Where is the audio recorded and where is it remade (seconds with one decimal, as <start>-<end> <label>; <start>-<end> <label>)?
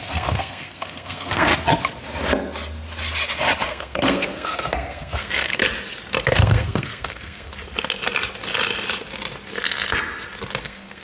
0.0-1.5 remade; 1.5-3.7 recorded; 3.7-5.6 remade; 5.6-6.3 recorded; 6.3-7.5 remade; 7.5-10.6 recorded; 10.6-11.0 remade